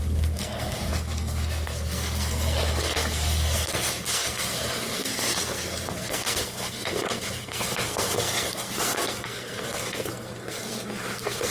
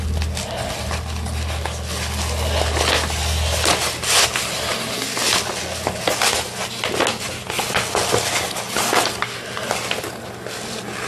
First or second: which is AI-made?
first